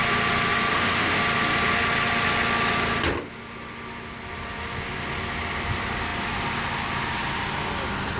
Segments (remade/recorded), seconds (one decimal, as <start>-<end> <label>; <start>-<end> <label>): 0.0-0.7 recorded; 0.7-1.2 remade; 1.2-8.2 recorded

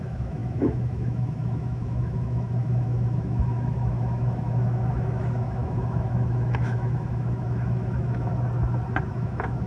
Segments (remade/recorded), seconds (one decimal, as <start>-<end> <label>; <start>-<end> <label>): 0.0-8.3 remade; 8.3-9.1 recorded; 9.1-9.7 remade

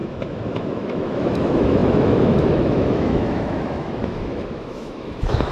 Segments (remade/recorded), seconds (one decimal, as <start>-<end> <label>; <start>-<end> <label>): 0.0-5.5 remade